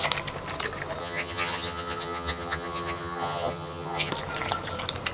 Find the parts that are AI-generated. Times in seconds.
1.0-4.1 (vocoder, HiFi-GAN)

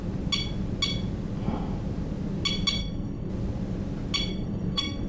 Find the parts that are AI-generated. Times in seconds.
2.8-3.3 (codec, SNAC); 4.3-5.1

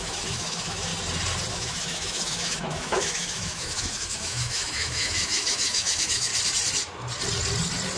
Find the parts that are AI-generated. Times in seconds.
0.0-0.9 (autoencoder, DAC-VAE); 1.5-6.3

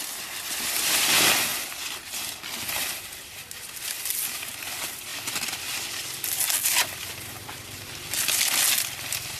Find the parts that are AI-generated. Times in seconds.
1.5-2.5 (vocoder, BigVGAN v2)

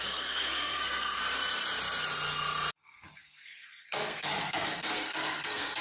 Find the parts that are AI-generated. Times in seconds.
0.0-1.2 (codec, SNAC); 2.7-5.8

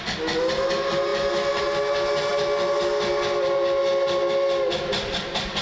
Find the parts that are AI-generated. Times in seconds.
none